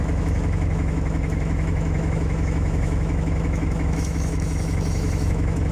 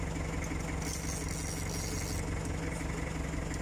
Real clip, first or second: second